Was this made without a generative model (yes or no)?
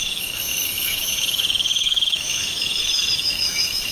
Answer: no